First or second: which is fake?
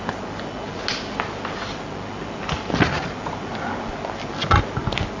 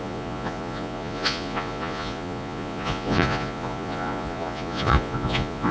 second